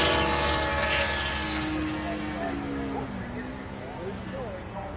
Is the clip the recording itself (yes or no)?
yes